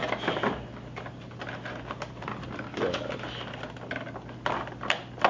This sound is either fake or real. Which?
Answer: real